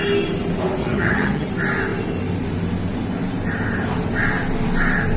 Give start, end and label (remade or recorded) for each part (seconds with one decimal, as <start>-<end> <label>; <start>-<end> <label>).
0.0-0.8 recorded; 0.8-1.5 remade; 1.5-5.2 recorded